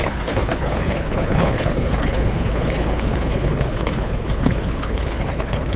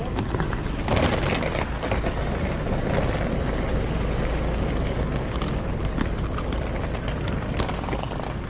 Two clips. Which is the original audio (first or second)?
second